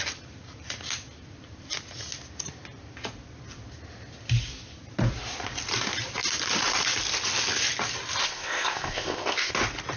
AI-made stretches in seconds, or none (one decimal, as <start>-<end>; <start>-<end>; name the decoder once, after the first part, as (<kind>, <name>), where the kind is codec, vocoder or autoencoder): 8.2-9.5 (codec, ZipCodec)